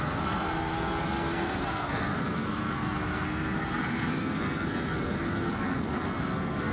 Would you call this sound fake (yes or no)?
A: yes